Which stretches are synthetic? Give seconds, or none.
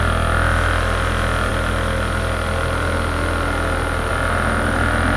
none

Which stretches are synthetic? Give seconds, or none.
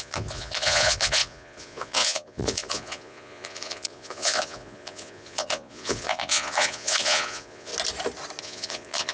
0.0-7.7 (vocoder, Vocos); 8.4-9.1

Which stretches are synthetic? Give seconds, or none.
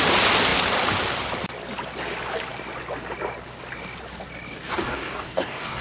4.7-5.8 (codec, DAC)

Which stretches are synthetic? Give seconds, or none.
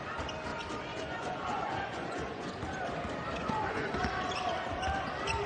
0.9-2.5 (vocoder, Vocos); 3.4-4.0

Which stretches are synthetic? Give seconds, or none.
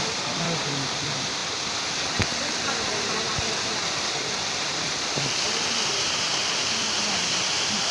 0.0-6.4 (vocoder, BigVGAN v2)